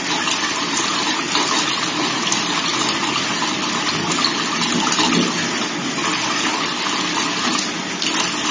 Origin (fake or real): real